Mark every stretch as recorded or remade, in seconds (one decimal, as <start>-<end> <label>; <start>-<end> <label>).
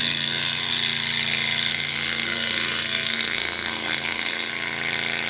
0.0-0.7 remade; 0.7-1.7 recorded; 1.7-4.5 remade; 4.5-5.3 recorded